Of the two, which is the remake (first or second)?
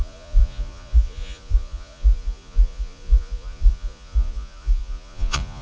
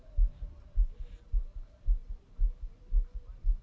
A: first